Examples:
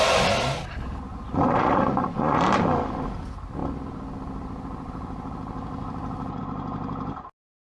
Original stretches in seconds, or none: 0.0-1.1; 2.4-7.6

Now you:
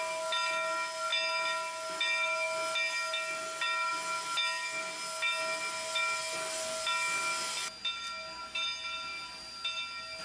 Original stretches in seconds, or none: 0.0-10.2

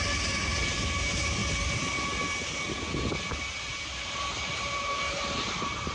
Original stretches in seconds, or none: 0.0-5.9

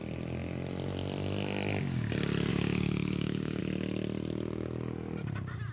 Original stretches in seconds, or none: 0.0-2.5; 3.6-5.7